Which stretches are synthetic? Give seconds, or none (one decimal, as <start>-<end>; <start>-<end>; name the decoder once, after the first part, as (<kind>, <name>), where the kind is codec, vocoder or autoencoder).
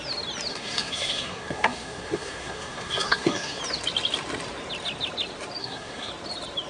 0.5-3.6 (codec, SNAC); 5.6-6.1